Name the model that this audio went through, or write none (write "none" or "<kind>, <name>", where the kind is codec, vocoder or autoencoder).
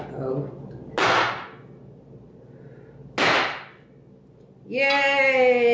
none